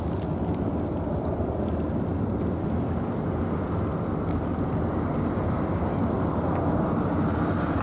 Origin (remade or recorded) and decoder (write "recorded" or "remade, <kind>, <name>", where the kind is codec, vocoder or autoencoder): recorded